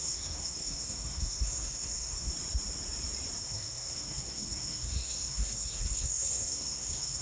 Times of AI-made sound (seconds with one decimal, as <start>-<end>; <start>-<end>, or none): 0.0-2.3; 3.4-7.2